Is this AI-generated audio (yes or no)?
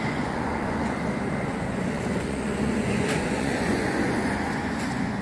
yes